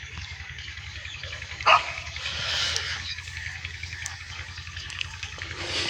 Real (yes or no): no